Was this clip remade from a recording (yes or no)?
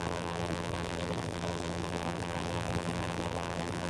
yes